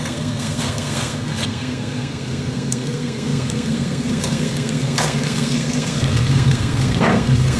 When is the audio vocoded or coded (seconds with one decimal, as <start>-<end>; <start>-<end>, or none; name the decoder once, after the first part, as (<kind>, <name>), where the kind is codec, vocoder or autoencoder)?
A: 0.0-7.6 (codec, SNAC)